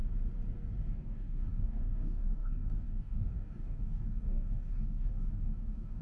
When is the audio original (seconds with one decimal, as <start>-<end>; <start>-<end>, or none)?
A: 0.0-0.9